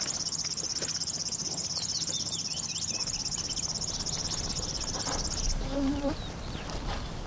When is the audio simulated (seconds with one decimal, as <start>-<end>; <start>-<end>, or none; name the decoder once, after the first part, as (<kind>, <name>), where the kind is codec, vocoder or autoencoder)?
none